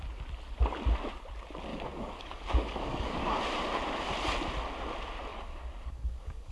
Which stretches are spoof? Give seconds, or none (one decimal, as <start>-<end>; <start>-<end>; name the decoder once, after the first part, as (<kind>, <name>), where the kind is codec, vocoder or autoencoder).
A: 1.7-3.4 (codec, DAC); 5.3-6.5